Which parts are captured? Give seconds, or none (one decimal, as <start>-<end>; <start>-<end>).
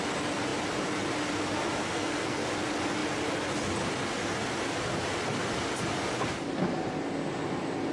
0.0-1.8; 2.4-7.9